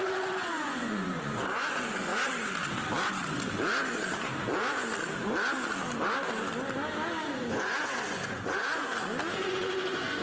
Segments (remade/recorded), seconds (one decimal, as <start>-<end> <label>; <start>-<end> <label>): 0.0-2.1 remade; 2.1-7.3 recorded; 7.3-8.9 remade; 8.9-9.5 recorded; 9.5-10.2 remade